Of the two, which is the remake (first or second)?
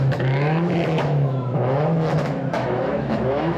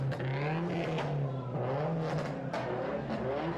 first